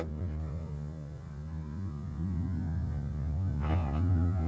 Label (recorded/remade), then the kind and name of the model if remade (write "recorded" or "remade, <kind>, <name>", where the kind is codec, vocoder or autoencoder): remade, vocoder, Vocos